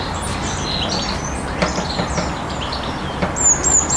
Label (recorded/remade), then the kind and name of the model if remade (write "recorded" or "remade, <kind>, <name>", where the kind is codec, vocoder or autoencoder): recorded